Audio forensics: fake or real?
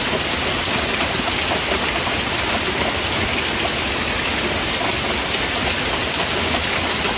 real